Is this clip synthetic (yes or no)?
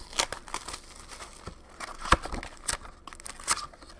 no